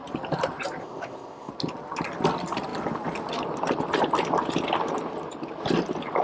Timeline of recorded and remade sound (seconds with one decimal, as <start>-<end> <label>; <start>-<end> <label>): 0.0-0.8 recorded; 0.8-1.5 remade; 1.5-6.2 recorded